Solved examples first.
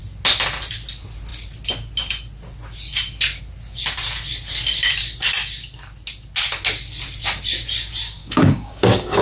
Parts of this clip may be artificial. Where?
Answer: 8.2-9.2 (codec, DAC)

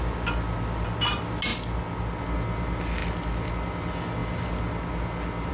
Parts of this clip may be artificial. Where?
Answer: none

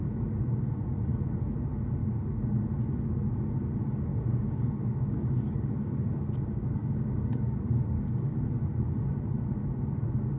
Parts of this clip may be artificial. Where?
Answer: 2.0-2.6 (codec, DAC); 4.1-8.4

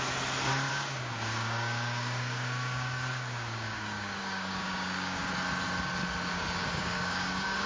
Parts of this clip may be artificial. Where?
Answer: 0.7-5.3 (codec, DAC); 6.3-7.7